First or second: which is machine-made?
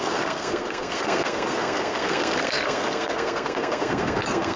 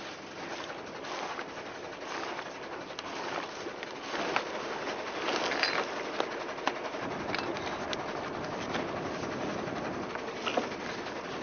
first